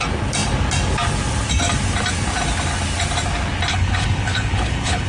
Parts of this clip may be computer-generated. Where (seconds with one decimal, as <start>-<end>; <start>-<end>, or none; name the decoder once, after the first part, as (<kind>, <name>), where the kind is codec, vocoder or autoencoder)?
3.7-5.1 (codec, HILCodec)